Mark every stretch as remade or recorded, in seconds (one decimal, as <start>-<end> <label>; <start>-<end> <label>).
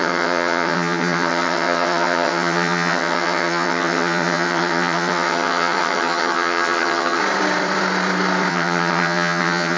0.0-7.2 remade; 7.2-8.5 recorded; 8.5-9.8 remade